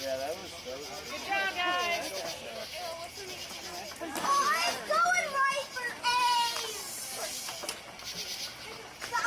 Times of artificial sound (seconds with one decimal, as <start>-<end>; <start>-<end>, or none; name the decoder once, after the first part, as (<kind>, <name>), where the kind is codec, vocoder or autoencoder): none